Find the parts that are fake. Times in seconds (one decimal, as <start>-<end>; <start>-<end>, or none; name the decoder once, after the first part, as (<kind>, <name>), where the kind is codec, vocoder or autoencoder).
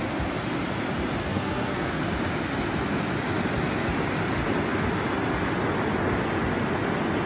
1.2-2.0 (codec, SNAC)